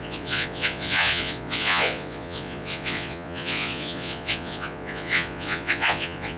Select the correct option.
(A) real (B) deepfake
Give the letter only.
B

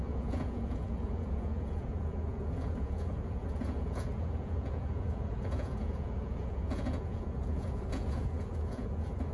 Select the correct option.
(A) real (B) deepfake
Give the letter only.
B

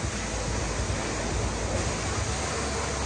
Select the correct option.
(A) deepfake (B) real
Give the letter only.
B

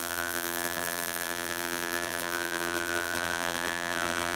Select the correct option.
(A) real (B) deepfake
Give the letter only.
B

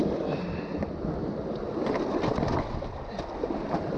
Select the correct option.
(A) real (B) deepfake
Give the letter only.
A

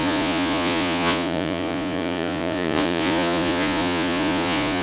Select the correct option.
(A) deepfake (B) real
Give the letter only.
A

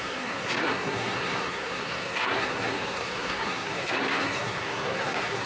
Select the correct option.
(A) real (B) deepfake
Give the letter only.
B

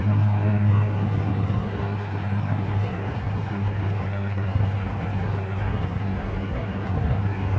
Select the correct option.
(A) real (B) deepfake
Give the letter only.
B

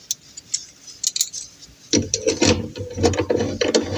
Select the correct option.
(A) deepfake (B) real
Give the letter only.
B